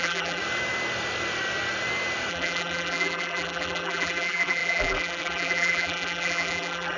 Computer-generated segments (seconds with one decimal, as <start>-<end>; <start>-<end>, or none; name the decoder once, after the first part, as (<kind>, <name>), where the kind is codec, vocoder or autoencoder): 0.0-0.4 (vocoder, BigVGAN v2); 2.3-7.0